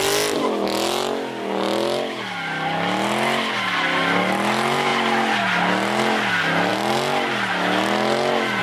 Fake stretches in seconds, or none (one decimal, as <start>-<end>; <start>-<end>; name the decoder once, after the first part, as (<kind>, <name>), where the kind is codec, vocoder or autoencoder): none